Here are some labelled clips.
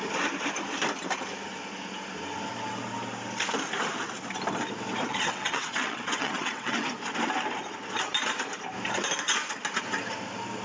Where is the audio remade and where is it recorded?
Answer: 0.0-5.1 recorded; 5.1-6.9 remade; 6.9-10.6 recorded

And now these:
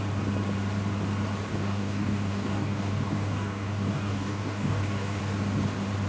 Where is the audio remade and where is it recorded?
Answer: 0.0-1.5 recorded; 1.5-5.2 remade; 5.2-6.1 recorded

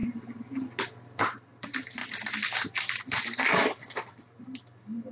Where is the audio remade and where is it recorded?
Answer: 0.0-1.2 recorded; 1.2-2.0 remade; 2.0-5.1 recorded